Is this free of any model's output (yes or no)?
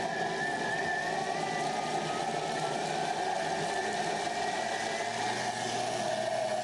yes